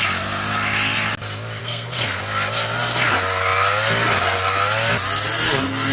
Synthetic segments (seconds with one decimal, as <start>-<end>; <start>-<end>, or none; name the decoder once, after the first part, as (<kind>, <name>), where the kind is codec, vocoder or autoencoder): 1.6-2.2 (codec, SNAC)